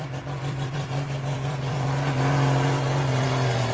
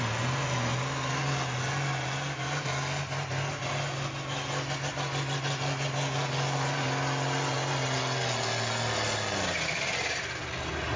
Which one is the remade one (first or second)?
first